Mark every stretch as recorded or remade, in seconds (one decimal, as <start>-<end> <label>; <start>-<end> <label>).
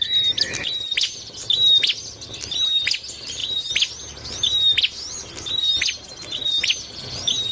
0.0-7.5 recorded